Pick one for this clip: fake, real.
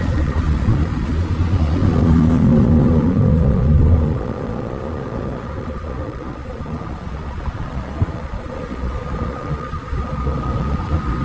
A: fake